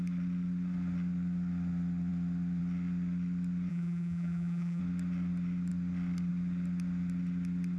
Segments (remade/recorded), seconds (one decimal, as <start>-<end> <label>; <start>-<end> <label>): 0.0-3.7 recorded; 3.7-4.8 remade; 4.8-7.8 recorded